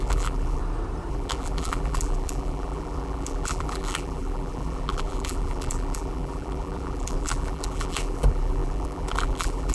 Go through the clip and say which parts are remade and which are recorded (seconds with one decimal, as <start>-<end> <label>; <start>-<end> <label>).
0.0-0.6 remade; 0.6-1.1 recorded; 1.1-9.7 remade